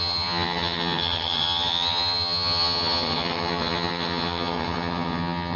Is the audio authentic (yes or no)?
no